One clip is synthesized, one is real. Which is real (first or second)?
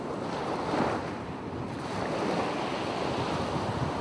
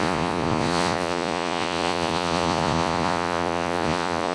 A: first